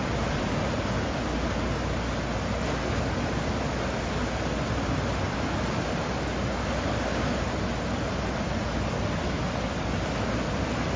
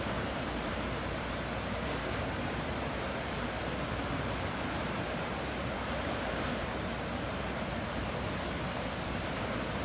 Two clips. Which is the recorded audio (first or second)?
first